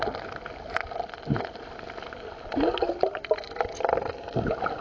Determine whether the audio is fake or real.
real